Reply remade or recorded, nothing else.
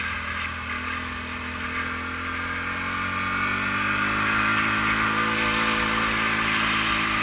recorded